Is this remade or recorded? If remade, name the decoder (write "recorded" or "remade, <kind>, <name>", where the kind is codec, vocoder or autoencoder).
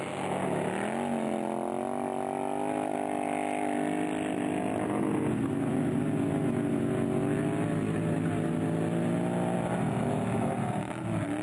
recorded